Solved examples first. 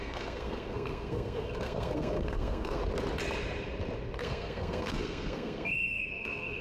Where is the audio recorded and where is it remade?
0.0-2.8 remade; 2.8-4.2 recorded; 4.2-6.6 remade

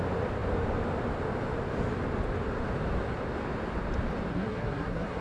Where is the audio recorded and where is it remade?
0.0-4.3 recorded; 4.3-5.2 remade